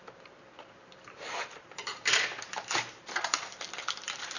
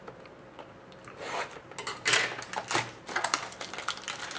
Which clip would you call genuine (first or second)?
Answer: second